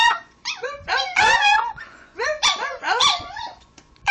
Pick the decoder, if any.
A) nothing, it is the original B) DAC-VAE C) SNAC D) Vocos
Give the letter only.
D